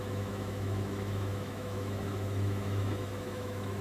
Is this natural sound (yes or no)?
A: no